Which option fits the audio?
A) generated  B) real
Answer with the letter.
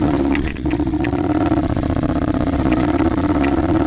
A